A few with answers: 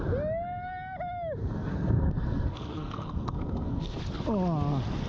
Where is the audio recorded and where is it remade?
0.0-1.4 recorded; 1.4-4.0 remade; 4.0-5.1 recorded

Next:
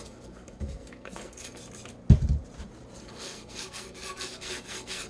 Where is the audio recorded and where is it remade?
0.0-1.6 remade; 1.6-3.0 recorded; 3.0-5.1 remade

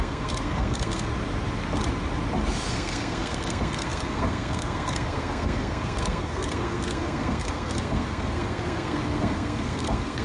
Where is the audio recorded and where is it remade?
0.0-1.1 remade; 1.1-2.7 recorded; 2.7-10.2 remade